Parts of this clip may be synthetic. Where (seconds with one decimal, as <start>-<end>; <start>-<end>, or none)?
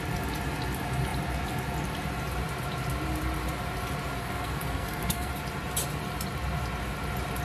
4.2-5.3